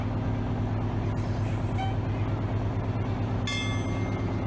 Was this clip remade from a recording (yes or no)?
no